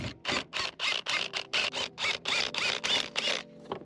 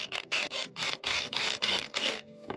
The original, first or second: first